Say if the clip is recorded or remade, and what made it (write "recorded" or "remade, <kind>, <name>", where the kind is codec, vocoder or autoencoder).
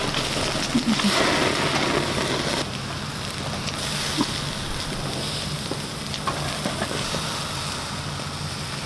recorded